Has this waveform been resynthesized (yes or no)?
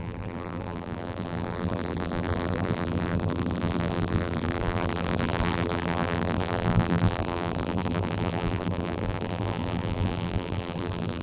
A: yes